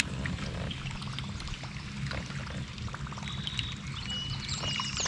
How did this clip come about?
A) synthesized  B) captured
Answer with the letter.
B